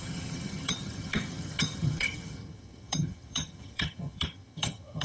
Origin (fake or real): fake